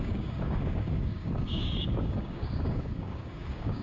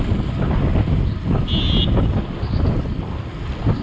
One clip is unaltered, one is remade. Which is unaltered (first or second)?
second